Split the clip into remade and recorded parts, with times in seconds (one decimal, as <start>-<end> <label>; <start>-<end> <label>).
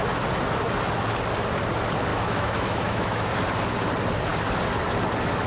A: 0.0-2.1 recorded; 2.1-3.3 remade; 3.3-5.5 recorded